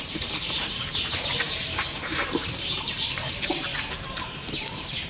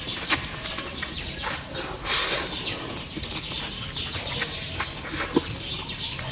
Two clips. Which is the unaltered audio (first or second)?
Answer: second